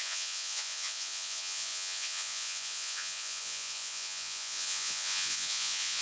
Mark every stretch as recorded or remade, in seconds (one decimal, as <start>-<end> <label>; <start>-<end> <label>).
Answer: 0.0-6.0 remade